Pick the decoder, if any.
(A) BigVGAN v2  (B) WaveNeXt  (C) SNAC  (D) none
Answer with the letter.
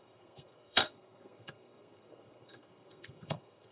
C